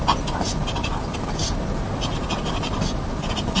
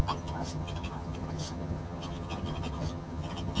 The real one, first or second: first